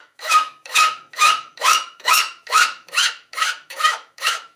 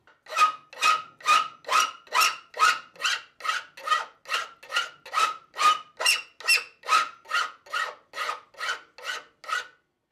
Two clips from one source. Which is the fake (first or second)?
first